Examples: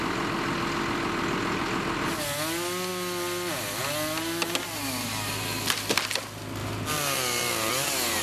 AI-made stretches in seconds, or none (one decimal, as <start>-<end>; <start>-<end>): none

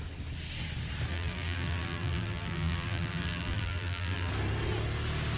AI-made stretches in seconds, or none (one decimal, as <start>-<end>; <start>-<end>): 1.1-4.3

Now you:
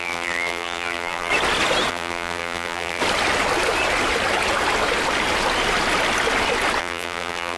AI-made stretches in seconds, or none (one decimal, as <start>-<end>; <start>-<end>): 0.0-1.3; 1.9-3.0; 6.8-7.6

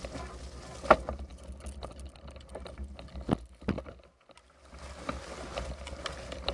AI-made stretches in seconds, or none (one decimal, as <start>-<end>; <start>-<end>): none

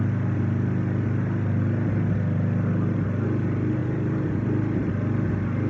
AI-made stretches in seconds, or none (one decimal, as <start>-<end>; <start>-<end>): 3.8-4.9